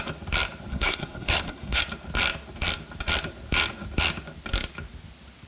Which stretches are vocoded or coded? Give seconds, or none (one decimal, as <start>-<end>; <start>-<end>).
0.7-1.8